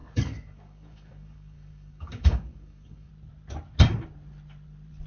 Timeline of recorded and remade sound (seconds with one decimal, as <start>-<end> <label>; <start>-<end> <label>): 0.0-3.1 remade; 3.1-5.1 recorded